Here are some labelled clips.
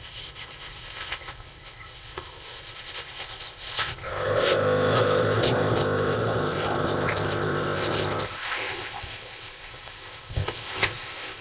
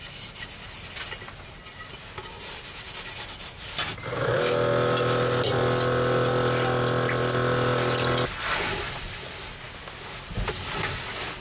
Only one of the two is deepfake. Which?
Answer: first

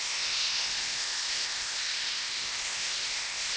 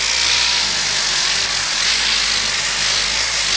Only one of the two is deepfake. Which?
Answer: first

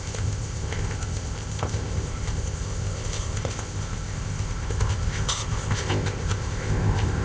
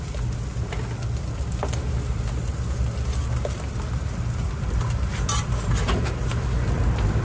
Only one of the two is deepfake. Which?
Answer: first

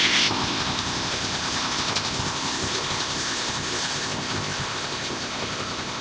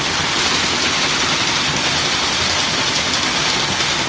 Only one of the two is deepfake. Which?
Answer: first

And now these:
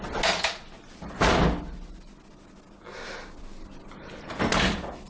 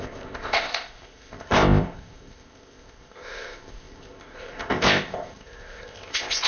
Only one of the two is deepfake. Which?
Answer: second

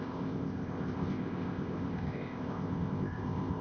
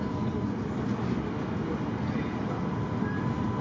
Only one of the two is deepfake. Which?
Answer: first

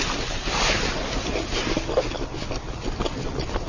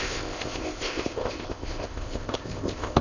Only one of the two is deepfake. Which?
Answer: second